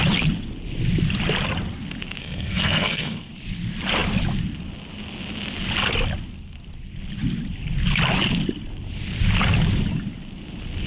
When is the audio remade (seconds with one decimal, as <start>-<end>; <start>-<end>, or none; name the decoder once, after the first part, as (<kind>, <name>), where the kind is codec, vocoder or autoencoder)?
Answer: 2.2-3.3 (codec, SNAC)